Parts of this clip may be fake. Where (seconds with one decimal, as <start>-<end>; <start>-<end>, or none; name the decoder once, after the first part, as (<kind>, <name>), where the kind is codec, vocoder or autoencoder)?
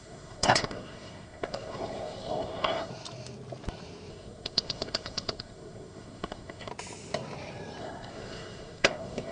0.0-2.9 (codec, SNAC); 4.1-6.7; 7.8-9.3